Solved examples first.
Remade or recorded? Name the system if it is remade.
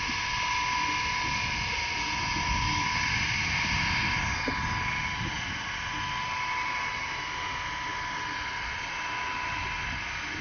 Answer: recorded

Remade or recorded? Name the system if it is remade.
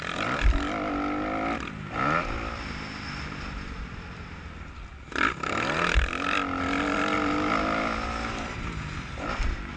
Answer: recorded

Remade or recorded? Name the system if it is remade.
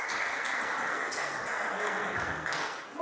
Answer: remade, codec, SNAC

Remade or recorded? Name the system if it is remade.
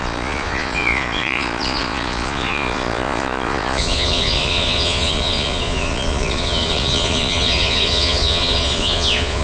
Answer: remade, vocoder, Vocos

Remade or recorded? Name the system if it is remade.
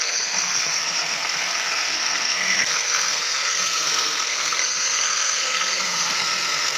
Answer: remade, codec, SNAC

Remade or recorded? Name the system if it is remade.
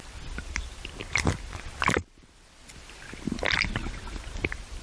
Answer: recorded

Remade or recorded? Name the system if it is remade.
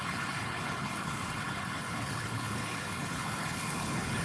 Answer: remade, codec, HILCodec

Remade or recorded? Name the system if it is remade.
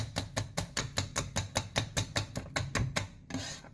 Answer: recorded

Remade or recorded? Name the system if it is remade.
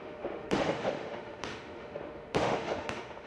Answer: remade, autoencoder, DAC-VAE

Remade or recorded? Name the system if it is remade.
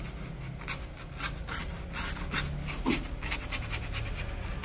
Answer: recorded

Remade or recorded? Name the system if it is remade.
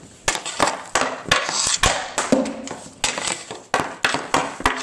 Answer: recorded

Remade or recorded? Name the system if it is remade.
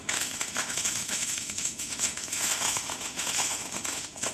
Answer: remade, autoencoder, DAC-VAE